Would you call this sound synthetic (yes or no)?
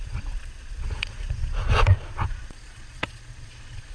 yes